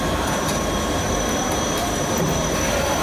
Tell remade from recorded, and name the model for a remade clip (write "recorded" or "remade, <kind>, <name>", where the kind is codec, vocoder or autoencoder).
remade, vocoder, BigVGAN v2